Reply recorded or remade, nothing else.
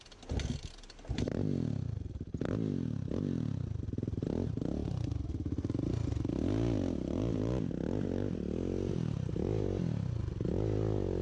recorded